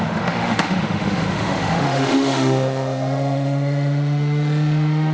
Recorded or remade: remade